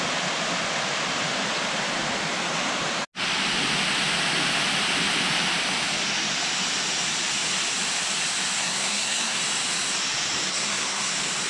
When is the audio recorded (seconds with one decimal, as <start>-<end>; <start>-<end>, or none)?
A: 0.0-8.6; 9.4-10.5; 11.1-11.5